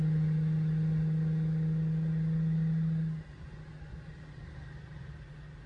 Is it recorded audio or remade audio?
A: recorded